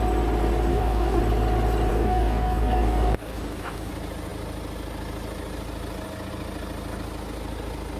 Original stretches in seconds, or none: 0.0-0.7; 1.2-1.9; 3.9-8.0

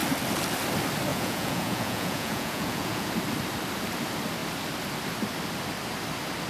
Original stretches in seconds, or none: 0.0-1.1; 3.1-6.5

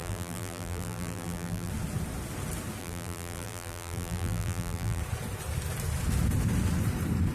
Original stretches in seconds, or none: 1.7-2.8; 5.0-7.3